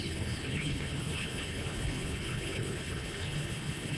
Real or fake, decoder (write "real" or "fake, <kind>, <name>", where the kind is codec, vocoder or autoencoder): fake, codec, HILCodec